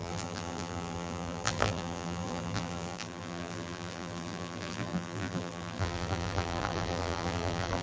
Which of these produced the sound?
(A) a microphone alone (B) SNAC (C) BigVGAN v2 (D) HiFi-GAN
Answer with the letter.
C